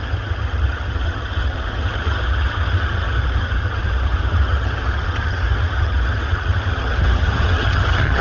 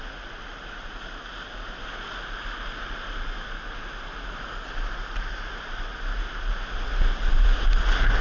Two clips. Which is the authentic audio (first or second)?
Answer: second